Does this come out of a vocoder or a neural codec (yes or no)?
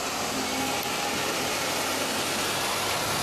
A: no